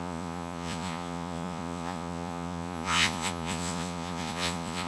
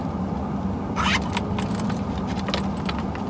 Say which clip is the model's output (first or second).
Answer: first